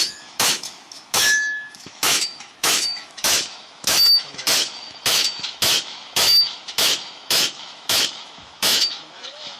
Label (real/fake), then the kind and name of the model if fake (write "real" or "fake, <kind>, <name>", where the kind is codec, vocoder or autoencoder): fake, autoencoder, DAC-VAE